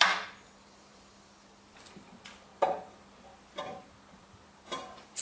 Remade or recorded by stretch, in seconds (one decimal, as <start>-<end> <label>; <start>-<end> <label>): 0.0-5.2 remade